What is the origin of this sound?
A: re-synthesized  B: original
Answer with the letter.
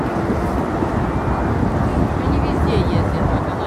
B